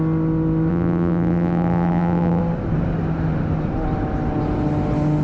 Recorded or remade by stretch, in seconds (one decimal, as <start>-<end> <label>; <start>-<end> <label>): 0.0-0.7 recorded; 0.7-2.4 remade; 2.4-5.2 recorded